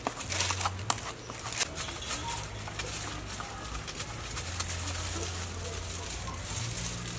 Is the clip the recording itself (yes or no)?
yes